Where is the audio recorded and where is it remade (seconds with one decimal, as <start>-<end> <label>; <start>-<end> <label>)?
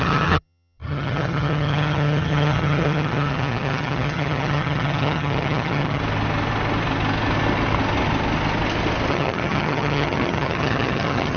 0.0-6.0 remade; 6.0-9.1 recorded; 9.1-11.4 remade